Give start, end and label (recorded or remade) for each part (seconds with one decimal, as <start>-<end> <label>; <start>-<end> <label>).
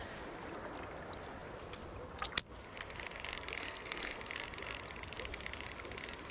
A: 0.0-3.6 recorded; 3.6-4.2 remade; 4.2-6.3 recorded